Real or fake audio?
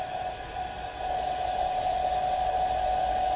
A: real